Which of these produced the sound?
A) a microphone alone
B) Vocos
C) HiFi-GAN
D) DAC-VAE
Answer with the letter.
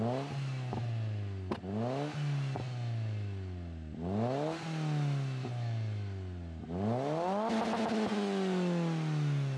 A